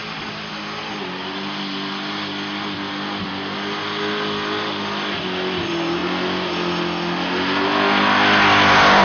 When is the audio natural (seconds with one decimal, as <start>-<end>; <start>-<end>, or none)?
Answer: 0.0-9.0